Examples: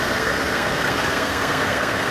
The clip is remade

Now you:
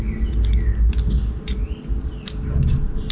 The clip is recorded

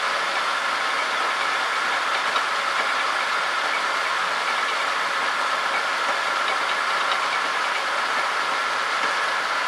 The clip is recorded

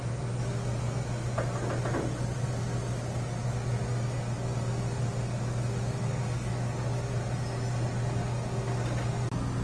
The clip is recorded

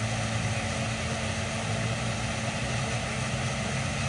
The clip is recorded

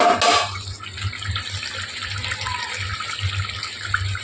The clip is recorded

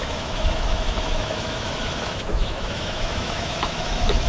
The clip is remade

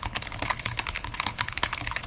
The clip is remade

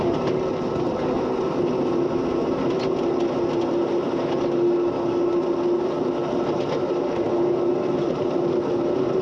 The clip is recorded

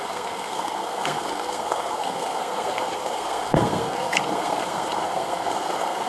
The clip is remade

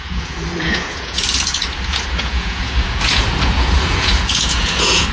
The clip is remade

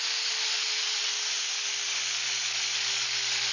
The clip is recorded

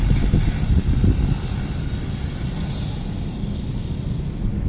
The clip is recorded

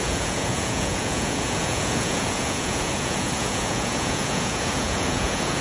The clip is remade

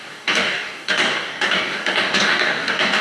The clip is remade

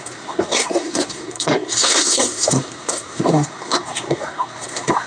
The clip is remade